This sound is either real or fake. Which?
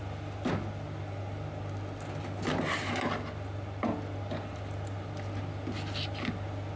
real